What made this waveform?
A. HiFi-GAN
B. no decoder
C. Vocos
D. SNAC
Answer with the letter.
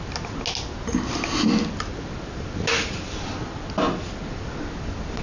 B